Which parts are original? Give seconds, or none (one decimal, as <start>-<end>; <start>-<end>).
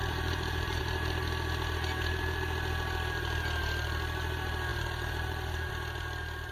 0.8-4.7; 5.7-6.5